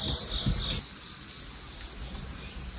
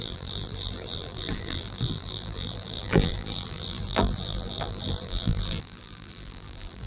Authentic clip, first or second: first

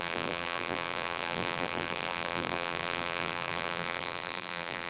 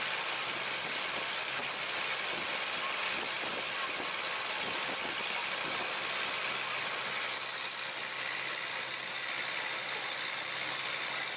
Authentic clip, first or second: second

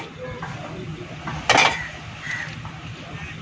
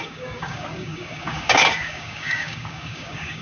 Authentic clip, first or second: first